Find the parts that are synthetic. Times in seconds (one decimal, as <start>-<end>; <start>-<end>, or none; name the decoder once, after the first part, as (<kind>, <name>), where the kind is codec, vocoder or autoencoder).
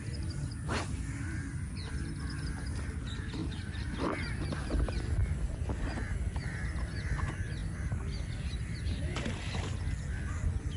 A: 3.4-3.9 (vocoder, BigVGAN v2)